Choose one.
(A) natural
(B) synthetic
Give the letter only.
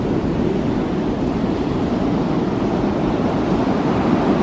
A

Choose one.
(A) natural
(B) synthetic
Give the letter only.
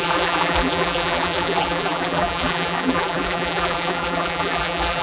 B